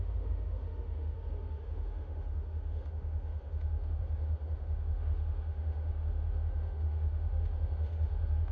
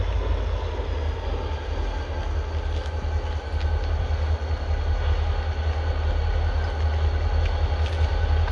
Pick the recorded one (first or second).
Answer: second